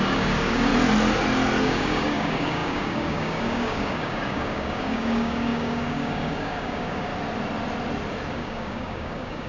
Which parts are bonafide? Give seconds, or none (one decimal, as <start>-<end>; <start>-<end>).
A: 0.7-1.6; 7.1-8.3